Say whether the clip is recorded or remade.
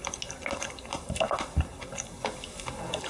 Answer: recorded